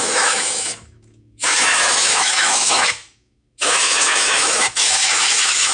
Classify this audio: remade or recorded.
remade